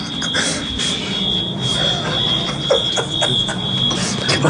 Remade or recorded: recorded